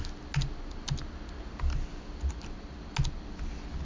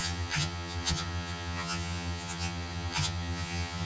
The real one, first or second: first